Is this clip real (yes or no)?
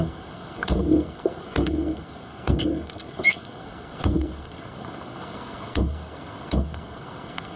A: no